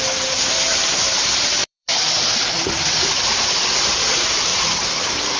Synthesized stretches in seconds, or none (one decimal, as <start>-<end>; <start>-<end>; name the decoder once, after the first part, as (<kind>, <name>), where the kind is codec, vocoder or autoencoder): 0.7-3.9 (vocoder, BigVGAN v2); 4.5-5.4